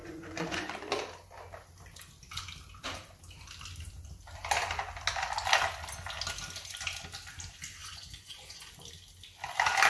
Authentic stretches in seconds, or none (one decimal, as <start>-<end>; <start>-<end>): 0.7-7.8; 8.7-9.9